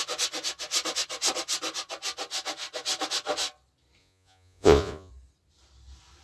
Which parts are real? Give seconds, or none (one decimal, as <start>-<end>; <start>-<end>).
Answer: 0.0-4.0; 5.1-6.2